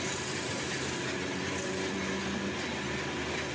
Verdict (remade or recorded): recorded